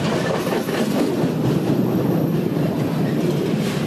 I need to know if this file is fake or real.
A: real